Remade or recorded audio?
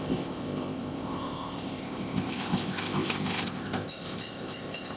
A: remade